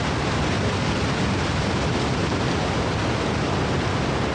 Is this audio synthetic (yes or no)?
no